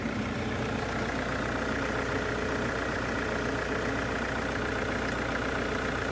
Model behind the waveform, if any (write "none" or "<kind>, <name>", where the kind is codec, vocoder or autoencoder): none